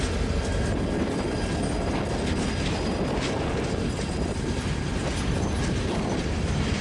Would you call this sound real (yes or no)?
yes